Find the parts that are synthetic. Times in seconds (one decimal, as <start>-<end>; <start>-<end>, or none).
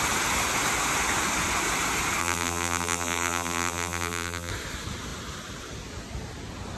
2.2-4.5